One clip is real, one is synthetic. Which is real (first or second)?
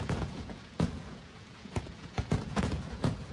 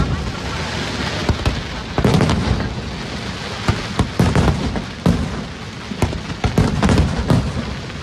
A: second